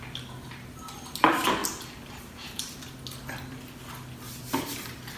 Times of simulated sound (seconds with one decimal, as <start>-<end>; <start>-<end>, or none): none